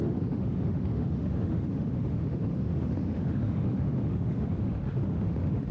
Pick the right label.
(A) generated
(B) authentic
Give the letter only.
A